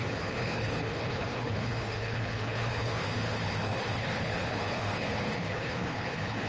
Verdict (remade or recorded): remade